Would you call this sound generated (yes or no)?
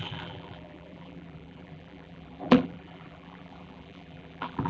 yes